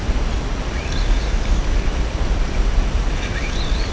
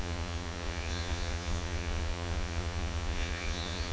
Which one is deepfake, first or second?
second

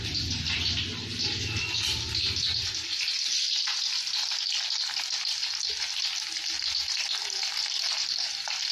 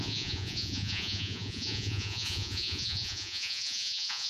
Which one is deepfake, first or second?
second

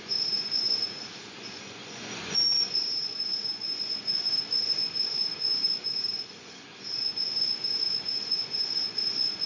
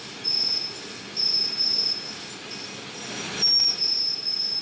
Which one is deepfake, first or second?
first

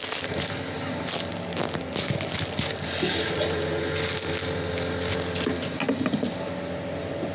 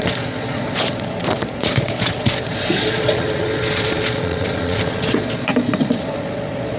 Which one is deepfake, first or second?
second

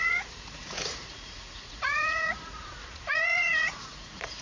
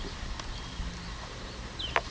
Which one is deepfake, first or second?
first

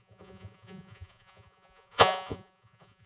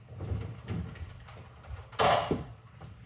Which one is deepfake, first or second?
first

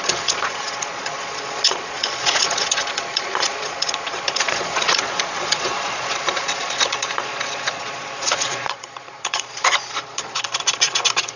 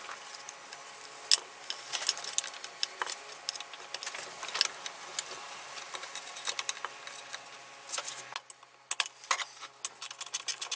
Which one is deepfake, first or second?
first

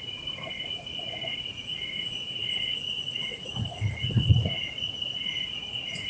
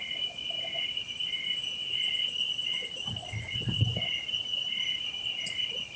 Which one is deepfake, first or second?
first